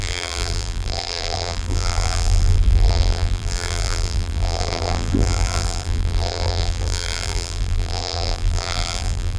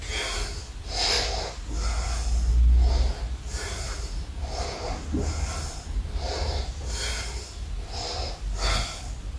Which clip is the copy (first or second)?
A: first